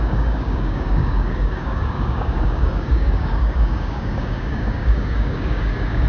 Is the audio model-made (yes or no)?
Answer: yes